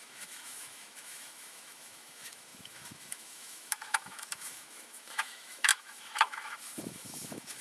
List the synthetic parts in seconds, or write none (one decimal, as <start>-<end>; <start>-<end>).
0.0-7.6